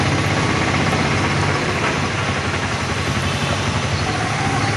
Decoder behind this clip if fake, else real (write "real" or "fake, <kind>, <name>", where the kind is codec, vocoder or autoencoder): real